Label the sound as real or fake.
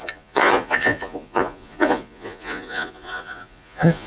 fake